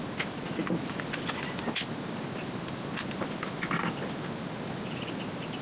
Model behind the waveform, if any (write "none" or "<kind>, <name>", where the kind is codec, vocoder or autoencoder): none